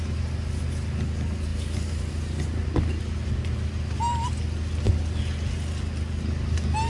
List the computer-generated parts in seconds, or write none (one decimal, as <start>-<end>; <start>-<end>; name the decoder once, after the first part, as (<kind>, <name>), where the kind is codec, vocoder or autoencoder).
none

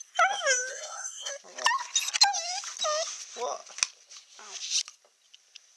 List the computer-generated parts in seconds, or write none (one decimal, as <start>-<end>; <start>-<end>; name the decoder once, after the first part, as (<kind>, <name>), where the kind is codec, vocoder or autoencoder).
0.7-1.3 (codec, SNAC)